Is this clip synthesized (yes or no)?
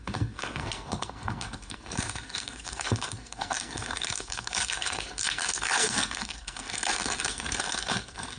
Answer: yes